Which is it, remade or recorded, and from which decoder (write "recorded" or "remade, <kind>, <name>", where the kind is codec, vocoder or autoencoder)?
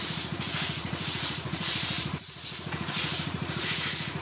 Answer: remade, vocoder, Vocos